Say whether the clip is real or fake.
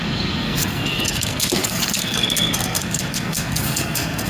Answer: fake